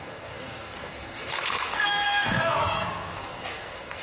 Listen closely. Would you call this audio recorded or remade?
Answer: remade